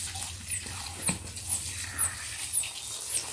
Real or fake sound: real